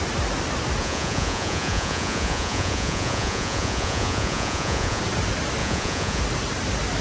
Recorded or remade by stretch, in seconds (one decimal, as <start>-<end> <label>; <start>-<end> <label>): 0.0-0.8 recorded; 0.8-5.0 remade; 5.0-5.6 recorded; 5.6-6.2 remade; 6.2-7.0 recorded

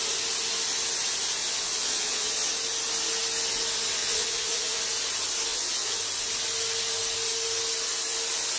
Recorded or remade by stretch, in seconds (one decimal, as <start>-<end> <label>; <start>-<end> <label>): 0.0-1.4 recorded; 1.4-2.5 remade; 2.5-4.0 recorded; 4.0-4.8 remade; 4.8-5.5 recorded; 5.5-6.0 remade; 6.0-8.6 recorded

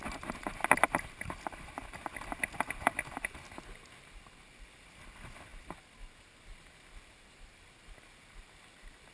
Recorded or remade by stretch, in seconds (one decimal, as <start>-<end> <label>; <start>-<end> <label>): 0.0-9.1 recorded

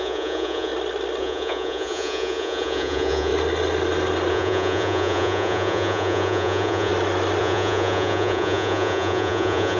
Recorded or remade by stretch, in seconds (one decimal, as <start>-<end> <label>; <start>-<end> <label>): 0.0-0.7 remade; 0.7-1.2 recorded; 1.2-3.3 remade; 3.3-4.3 recorded; 4.3-6.9 remade; 6.9-7.4 recorded; 7.4-9.8 remade

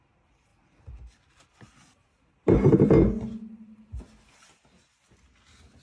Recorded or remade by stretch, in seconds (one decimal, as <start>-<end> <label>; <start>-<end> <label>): 0.0-5.8 recorded

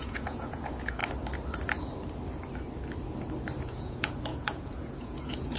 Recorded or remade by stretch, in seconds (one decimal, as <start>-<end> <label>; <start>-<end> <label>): 0.0-1.0 remade; 1.0-3.6 recorded; 3.6-5.6 remade

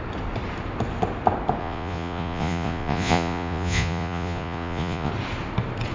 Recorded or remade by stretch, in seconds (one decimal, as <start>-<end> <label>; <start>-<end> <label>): 0.0-1.6 recorded; 1.6-5.1 remade; 5.1-5.9 recorded